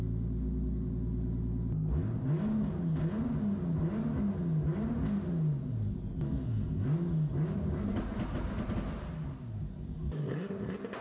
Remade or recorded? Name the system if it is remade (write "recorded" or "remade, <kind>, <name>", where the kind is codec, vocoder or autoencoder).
recorded